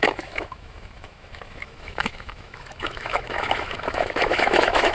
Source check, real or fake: fake